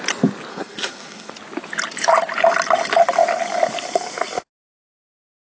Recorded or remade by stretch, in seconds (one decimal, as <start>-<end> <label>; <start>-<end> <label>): 0.0-0.5 recorded; 0.5-1.3 remade; 1.3-5.4 recorded